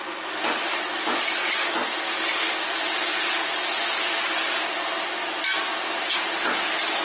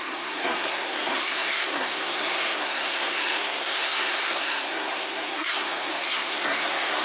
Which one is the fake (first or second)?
second